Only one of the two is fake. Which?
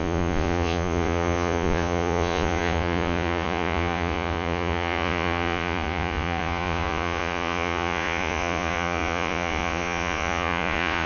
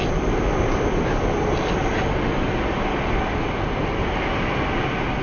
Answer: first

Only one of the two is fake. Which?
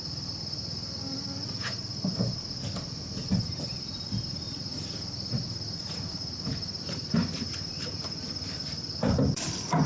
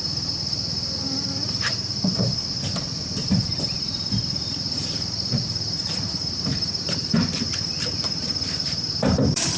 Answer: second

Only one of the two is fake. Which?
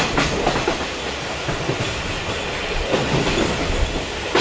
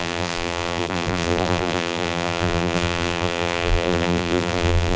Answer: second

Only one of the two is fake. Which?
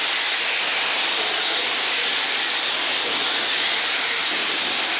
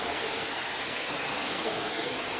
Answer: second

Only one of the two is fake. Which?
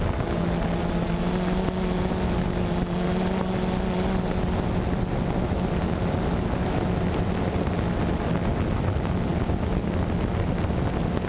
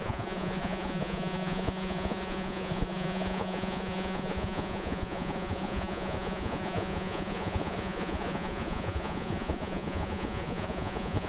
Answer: second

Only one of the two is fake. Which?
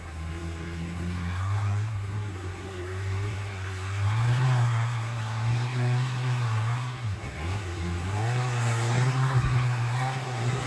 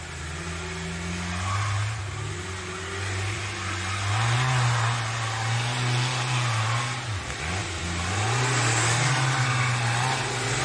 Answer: first